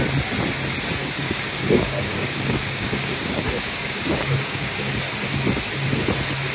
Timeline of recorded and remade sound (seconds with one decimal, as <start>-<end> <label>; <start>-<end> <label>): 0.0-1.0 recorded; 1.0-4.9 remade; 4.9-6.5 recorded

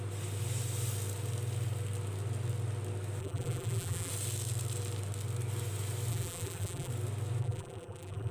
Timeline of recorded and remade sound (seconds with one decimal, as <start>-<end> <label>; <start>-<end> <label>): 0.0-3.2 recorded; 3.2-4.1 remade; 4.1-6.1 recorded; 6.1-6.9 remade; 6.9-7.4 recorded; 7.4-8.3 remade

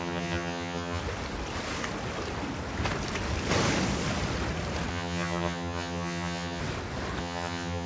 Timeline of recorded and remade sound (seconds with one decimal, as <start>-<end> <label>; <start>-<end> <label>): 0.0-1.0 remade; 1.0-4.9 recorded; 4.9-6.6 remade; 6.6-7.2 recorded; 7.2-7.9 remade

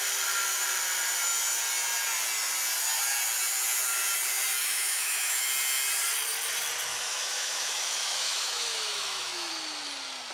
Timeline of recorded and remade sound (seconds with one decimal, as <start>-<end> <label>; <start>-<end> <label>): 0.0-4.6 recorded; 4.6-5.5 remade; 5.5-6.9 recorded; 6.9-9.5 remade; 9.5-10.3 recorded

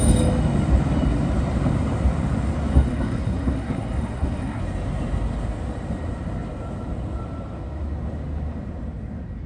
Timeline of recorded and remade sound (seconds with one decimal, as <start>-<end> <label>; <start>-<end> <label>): 0.0-2.7 recorded; 2.7-4.6 remade; 4.6-9.5 recorded

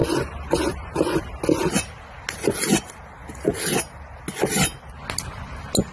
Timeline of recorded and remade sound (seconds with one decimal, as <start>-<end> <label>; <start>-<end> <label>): 0.0-5.9 recorded

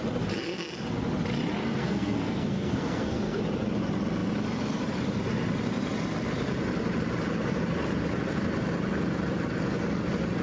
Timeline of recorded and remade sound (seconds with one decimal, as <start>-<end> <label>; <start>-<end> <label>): 0.0-1.6 recorded; 1.6-3.4 remade; 3.4-10.4 recorded

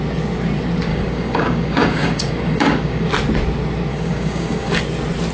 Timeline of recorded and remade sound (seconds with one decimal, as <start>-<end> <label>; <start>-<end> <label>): 0.0-0.9 recorded; 0.9-3.1 remade; 3.1-3.9 recorded; 3.9-4.8 remade; 4.8-5.3 recorded